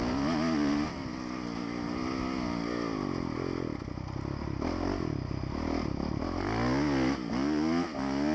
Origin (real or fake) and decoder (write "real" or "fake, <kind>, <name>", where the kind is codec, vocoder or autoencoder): real